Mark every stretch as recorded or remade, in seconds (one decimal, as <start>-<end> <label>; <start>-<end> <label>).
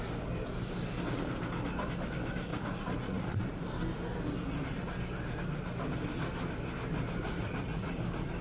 0.0-2.5 recorded; 2.5-3.6 remade; 3.6-7.2 recorded; 7.2-7.9 remade; 7.9-8.4 recorded